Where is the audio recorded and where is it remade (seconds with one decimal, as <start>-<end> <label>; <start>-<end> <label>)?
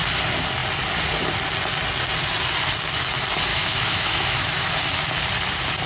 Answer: 0.0-3.5 recorded; 3.5-4.7 remade; 4.7-5.9 recorded